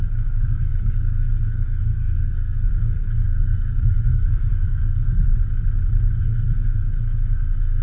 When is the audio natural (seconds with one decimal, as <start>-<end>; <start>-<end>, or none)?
5.3-6.2